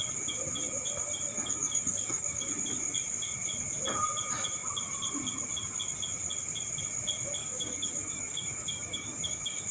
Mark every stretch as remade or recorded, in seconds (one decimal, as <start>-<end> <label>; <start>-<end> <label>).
0.0-1.3 recorded; 1.3-2.5 remade; 2.5-7.4 recorded; 7.4-9.7 remade